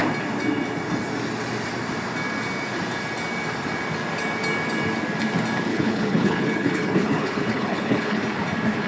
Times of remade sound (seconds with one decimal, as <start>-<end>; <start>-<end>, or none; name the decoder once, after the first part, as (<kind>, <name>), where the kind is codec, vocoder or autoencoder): 5.7-8.2 (codec, HILCodec)